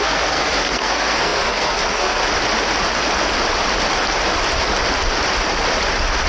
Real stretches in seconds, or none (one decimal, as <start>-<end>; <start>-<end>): 2.2-6.3